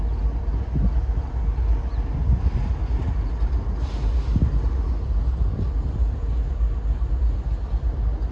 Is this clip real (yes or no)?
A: yes